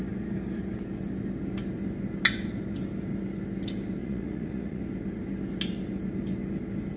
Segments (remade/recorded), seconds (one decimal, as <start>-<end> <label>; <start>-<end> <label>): 0.0-4.0 recorded; 4.0-4.8 remade; 4.8-7.0 recorded